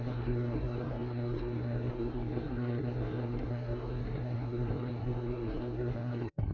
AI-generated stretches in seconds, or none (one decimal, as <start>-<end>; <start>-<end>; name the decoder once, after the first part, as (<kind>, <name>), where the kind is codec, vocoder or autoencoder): 0.0-6.5 (codec, SNAC)